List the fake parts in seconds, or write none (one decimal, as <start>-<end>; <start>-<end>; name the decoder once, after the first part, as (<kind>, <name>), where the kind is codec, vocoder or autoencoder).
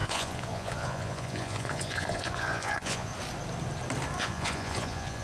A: 0.0-3.1 (vocoder, Vocos); 4.2-5.2